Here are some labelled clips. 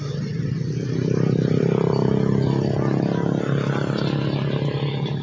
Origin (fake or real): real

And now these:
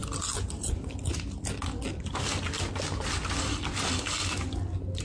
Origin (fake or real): real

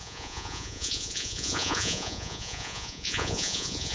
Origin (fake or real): fake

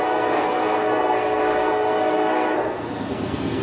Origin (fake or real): fake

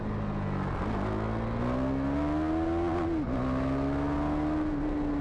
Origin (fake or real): real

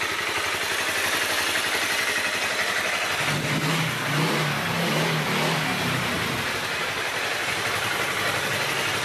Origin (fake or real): real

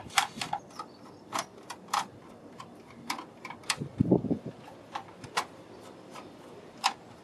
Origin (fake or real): fake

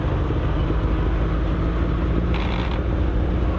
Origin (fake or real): real